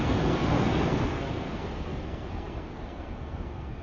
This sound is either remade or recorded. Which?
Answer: remade